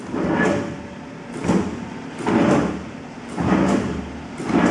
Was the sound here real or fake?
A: real